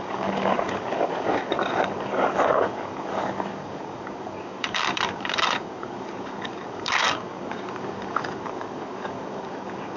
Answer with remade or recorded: remade